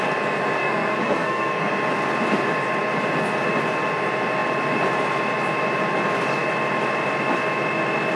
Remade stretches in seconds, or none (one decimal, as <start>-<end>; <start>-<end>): 0.6-1.7